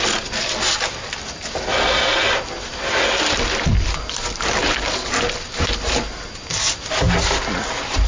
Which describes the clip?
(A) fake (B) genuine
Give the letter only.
B